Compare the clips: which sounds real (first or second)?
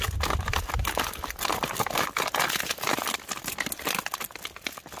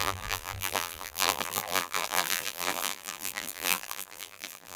first